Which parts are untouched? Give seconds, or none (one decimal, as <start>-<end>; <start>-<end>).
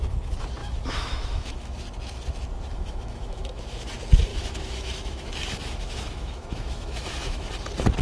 0.0-0.6; 1.8-2.7; 3.9-4.3; 7.5-8.0